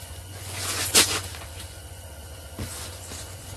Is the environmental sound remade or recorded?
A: remade